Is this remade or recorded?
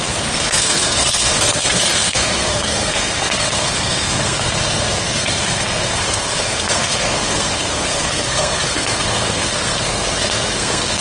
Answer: remade